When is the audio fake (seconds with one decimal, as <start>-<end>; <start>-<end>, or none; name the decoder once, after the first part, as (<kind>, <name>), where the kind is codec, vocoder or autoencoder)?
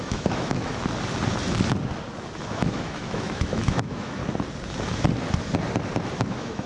0.0-0.7 (autoencoder, DAC-VAE); 2.5-4.2; 6.2-6.7